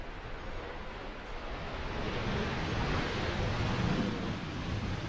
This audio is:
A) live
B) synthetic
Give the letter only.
A